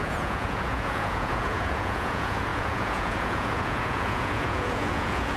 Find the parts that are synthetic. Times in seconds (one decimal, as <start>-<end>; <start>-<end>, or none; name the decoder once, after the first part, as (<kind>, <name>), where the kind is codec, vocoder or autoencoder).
0.0-5.4 (vocoder, Vocos)